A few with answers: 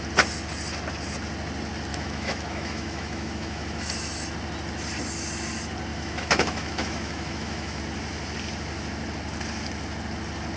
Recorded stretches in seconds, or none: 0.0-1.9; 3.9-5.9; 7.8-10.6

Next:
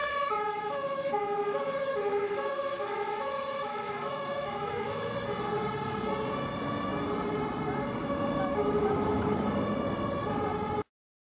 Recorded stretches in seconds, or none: 5.1-8.0; 9.5-11.3

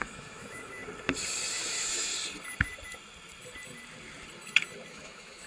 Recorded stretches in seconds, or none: 0.8-1.5; 2.1-4.9